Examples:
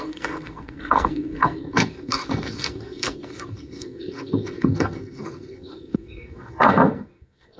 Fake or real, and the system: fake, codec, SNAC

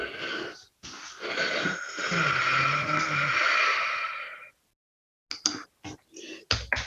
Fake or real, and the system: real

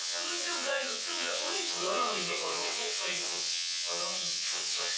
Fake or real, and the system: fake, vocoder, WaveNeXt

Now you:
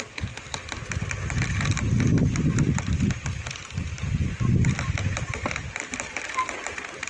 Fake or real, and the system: real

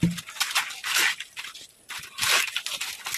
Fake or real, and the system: real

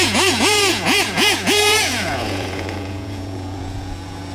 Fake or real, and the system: fake, vocoder, Vocos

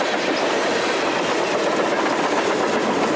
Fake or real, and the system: real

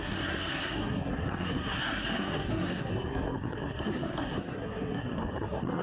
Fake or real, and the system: fake, codec, SNAC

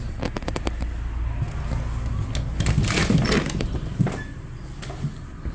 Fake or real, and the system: real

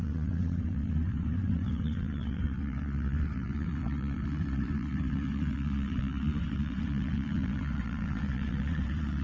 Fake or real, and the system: fake, vocoder, WaveNeXt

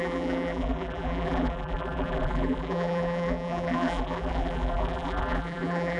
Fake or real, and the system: fake, vocoder, BigVGAN v2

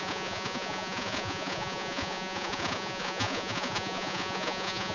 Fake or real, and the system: fake, vocoder, Vocos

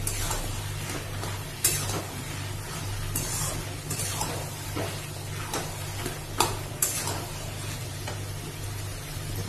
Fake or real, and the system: real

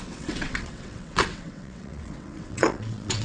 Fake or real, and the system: fake, vocoder, WaveNeXt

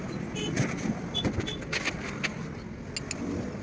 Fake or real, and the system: real